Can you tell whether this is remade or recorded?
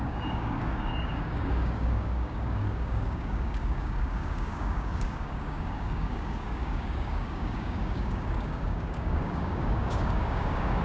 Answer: remade